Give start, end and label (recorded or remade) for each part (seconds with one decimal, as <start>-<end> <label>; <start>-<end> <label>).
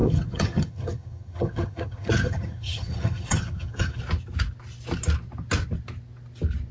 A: 0.0-4.0 remade; 4.0-6.7 recorded